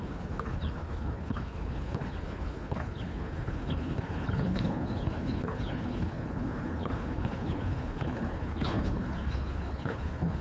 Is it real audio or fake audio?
fake